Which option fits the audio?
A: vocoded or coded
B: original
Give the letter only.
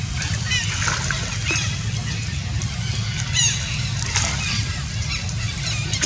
B